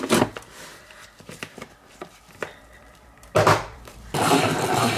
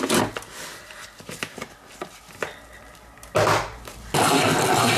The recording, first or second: second